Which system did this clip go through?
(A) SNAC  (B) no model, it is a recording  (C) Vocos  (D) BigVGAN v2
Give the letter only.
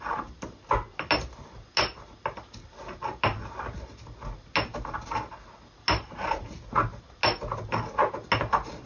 B